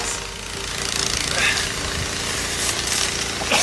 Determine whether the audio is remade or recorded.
recorded